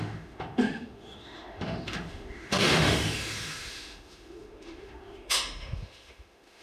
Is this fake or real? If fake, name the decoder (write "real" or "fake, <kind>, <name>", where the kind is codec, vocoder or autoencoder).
fake, autoencoder, DAC-VAE